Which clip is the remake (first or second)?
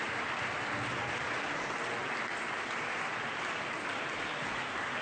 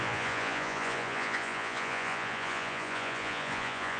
second